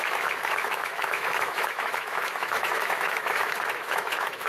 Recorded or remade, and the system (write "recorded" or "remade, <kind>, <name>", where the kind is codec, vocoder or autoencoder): remade, autoencoder, DAC-VAE